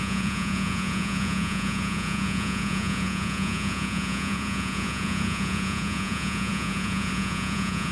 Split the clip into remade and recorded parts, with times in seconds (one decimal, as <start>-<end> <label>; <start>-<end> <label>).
0.0-7.9 remade